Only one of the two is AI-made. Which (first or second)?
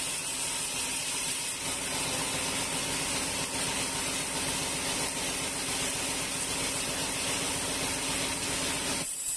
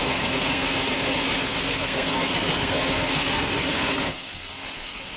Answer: second